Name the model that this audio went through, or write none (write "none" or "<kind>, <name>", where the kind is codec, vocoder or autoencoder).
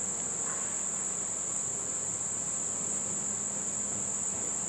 none